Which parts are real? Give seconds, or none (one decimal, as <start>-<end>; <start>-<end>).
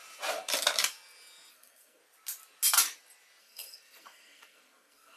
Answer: 0.0-1.5; 2.0-3.4